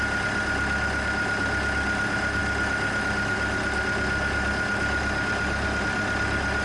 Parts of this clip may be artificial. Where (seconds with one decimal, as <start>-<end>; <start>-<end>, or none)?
none